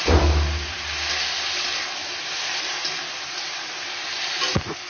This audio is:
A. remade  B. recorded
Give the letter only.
B